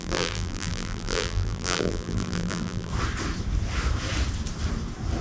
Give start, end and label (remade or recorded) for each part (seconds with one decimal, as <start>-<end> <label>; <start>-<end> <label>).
0.0-2.9 remade; 2.9-5.2 recorded

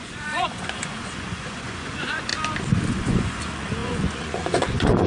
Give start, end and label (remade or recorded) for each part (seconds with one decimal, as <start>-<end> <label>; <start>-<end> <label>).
0.0-2.3 remade; 2.3-2.9 recorded; 2.9-5.1 remade